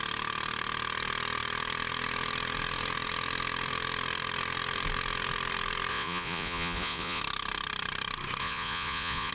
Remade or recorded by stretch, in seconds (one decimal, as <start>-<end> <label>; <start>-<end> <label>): 0.0-5.9 recorded; 5.9-7.2 remade; 7.2-8.4 recorded; 8.4-9.3 remade